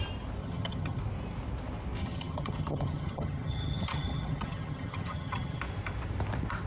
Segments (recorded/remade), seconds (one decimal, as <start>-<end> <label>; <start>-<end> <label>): 0.0-0.4 recorded; 0.4-1.0 remade; 1.0-2.0 recorded; 2.0-5.6 remade; 5.6-6.7 recorded